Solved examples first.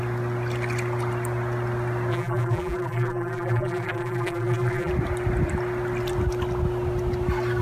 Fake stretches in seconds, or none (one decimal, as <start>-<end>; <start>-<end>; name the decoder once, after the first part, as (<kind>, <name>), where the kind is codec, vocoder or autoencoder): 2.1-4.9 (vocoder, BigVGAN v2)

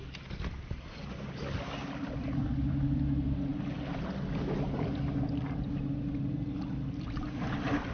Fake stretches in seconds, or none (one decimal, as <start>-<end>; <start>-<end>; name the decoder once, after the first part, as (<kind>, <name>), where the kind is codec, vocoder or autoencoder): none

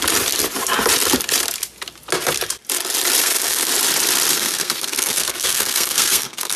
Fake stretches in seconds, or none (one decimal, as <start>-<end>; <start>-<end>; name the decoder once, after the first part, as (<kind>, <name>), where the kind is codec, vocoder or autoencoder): 3.2-3.7 (codec, SNAC); 4.3-6.6

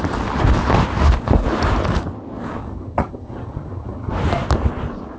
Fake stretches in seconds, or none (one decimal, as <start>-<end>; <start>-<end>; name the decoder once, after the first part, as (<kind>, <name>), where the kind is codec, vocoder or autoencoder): 2.6-4.1 (vocoder, HiFi-GAN)

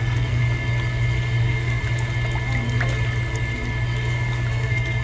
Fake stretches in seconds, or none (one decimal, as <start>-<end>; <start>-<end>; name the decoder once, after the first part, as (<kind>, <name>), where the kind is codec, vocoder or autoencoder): 0.0-0.4 (codec, SNAC); 1.4-1.8; 4.5-5.0

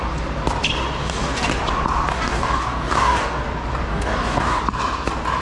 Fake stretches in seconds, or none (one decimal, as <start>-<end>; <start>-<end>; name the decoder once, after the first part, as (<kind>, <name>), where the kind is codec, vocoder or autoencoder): 1.0-1.5 (codec, DAC); 2.1-3.4; 3.9-4.6